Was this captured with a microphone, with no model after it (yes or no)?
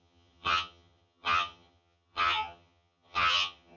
no